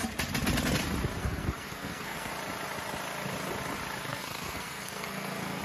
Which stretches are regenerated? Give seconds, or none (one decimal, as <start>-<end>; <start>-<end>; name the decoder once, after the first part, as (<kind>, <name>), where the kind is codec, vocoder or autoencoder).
1.2-2.3 (codec, SNAC); 4.1-5.6